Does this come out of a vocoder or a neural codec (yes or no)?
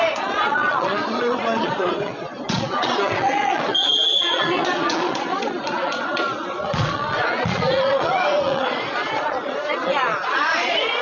yes